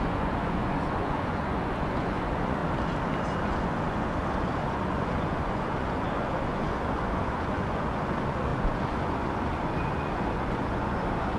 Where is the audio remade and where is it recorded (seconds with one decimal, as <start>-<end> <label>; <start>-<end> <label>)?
0.0-2.6 remade; 2.6-3.4 recorded; 3.4-11.4 remade